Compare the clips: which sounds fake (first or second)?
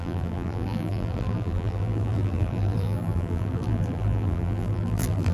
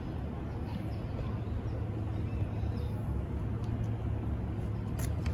first